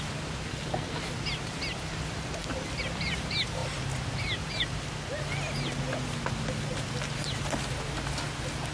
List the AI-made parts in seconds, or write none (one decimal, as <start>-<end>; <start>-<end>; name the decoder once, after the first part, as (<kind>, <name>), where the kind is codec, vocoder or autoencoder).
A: 0.5-1.0 (codec, SNAC)